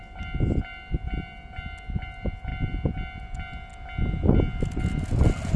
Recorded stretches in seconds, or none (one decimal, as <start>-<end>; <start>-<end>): 0.0-5.6

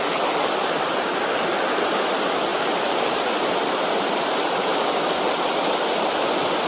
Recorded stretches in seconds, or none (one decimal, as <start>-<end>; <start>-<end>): 0.0-6.7

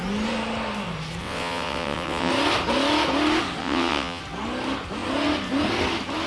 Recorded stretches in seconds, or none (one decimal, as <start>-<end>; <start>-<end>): 0.0-1.2; 2.3-3.6; 4.2-6.3

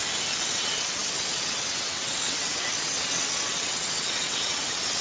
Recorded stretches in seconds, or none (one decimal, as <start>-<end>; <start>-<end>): 0.0-0.5

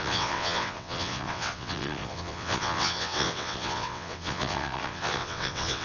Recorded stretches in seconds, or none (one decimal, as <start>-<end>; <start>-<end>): none

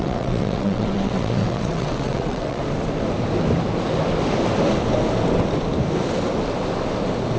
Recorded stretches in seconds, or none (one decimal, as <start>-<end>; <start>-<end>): 2.6-7.4